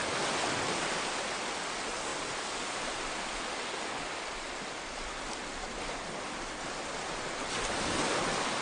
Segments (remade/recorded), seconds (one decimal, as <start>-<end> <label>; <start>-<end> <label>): 0.0-8.6 recorded